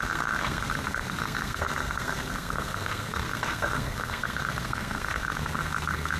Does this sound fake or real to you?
fake